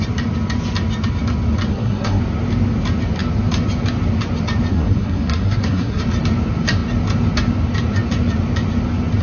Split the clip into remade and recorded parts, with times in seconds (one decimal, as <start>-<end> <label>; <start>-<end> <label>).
0.0-1.7 recorded; 1.7-2.2 remade; 2.2-4.7 recorded; 4.7-6.0 remade; 6.0-9.2 recorded